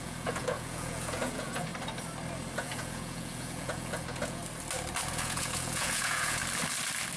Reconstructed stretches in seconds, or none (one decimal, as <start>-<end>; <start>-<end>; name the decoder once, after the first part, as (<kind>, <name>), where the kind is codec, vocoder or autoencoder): 0.0-1.7 (vocoder, Vocos); 2.6-4.4; 5.1-6.4